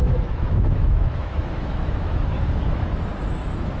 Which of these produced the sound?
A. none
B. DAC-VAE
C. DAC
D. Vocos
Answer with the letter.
B